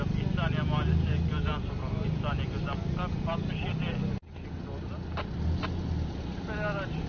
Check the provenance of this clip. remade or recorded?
recorded